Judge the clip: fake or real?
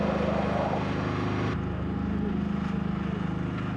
real